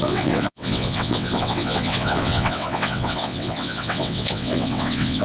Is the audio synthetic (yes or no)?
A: yes